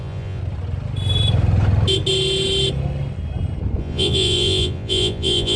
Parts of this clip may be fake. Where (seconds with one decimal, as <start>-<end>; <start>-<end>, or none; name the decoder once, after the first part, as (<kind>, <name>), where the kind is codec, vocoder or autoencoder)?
0.0-0.4 (vocoder, Vocos); 3.8-5.6